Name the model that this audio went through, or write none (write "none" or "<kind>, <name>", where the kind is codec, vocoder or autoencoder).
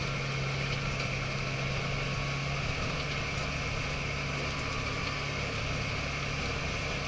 none